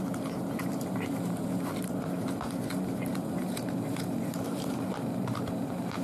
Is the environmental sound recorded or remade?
remade